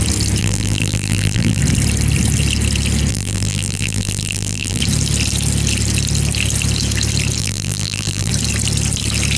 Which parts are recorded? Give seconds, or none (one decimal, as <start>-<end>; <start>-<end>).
0.0-0.4; 1.6-3.1; 4.8-7.4; 8.3-9.4